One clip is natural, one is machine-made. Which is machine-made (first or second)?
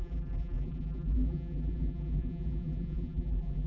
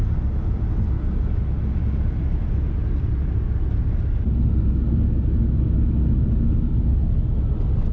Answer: first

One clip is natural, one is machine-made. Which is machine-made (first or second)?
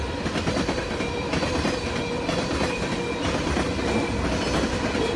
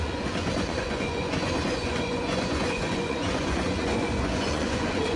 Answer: second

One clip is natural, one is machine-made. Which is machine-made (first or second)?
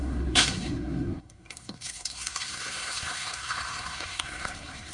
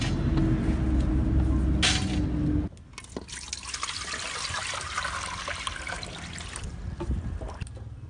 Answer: first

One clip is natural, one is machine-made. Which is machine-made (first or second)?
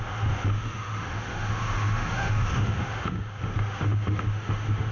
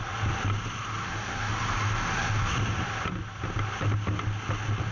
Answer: first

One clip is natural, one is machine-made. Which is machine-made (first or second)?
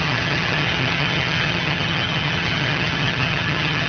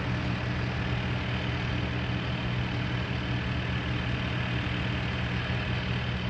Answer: first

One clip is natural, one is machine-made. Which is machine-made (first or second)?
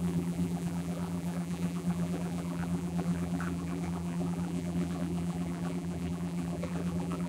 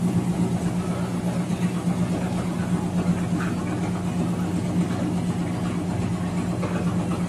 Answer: first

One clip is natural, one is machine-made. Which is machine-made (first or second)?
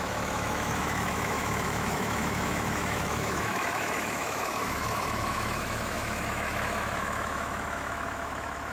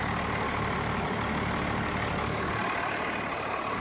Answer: first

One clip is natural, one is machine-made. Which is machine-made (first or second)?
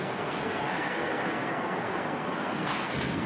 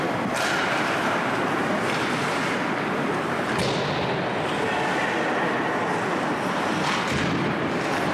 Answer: first